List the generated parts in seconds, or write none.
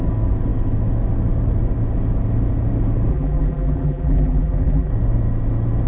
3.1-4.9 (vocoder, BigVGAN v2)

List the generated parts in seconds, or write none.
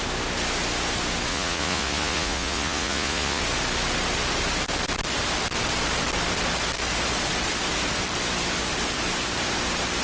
1.3-3.4 (vocoder, Vocos)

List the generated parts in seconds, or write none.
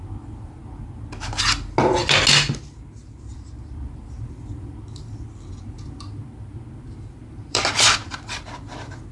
0.0-0.6 (vocoder, BigVGAN v2); 3.2-9.1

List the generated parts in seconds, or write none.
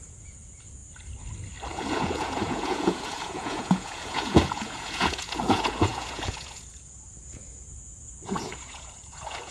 0.0-0.8 (vocoder, Vocos); 1.7-9.5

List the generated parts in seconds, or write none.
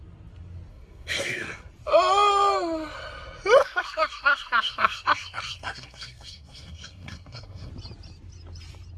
0.7-1.7 (codec, SNAC); 3.6-7.7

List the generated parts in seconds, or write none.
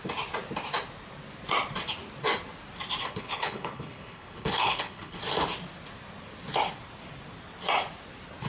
3.0-5.2 (codec, HILCodec)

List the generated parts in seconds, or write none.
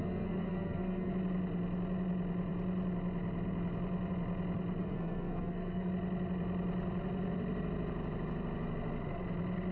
0.0-1.1 (codec, SNAC); 4.8-5.9